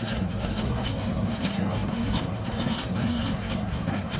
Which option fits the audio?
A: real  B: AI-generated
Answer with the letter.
B